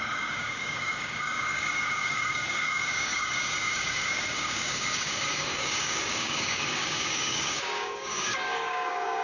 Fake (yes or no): yes